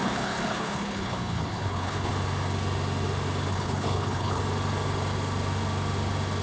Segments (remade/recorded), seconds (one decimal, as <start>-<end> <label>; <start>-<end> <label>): 0.0-2.1 remade; 2.1-3.5 recorded; 3.5-4.4 remade; 4.4-6.4 recorded